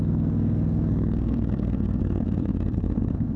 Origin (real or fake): fake